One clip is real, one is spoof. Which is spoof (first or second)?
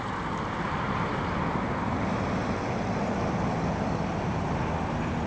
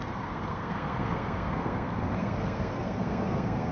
second